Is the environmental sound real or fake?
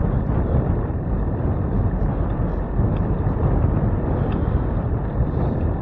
real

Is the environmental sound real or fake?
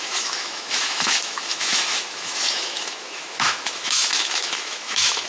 fake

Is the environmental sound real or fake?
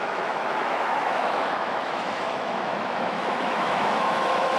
fake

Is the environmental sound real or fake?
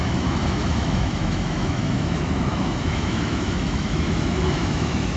fake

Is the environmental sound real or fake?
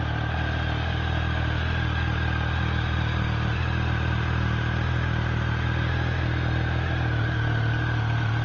real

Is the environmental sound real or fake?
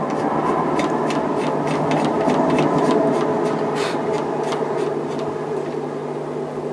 real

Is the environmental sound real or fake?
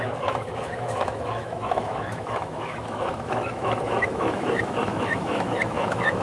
fake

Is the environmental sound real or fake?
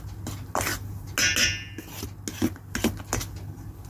real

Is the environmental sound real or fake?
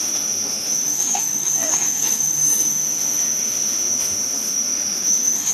fake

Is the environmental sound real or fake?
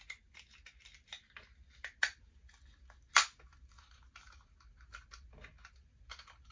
real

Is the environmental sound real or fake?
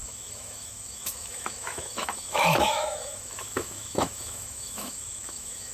fake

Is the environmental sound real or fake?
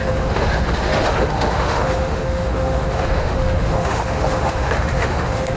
fake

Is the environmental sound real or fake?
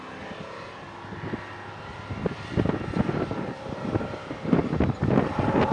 real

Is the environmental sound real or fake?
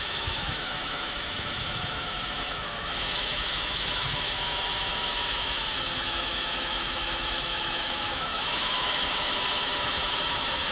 fake